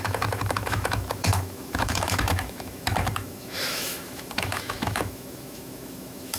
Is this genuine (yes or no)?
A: no